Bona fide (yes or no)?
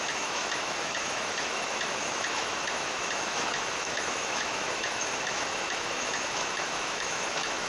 no